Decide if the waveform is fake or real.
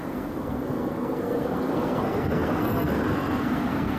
fake